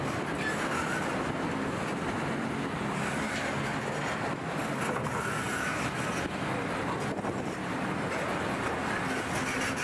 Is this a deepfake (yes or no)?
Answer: no